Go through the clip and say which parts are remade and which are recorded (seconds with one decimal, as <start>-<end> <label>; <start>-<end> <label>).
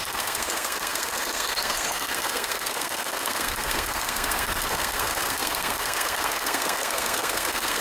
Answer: 0.0-7.8 remade